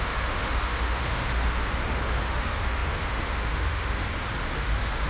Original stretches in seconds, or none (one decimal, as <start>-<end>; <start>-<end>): 4.0-4.6